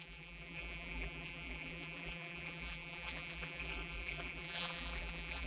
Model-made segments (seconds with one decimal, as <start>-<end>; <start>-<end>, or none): 0.0-5.5